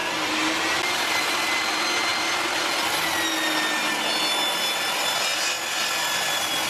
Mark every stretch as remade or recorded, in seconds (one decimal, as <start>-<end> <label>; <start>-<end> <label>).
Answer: 0.0-6.7 recorded